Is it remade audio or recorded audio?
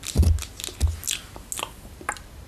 recorded